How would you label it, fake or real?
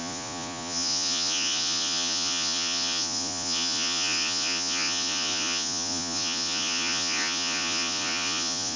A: fake